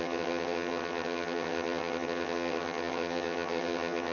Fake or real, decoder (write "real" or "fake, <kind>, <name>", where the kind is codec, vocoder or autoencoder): fake, vocoder, HiFi-GAN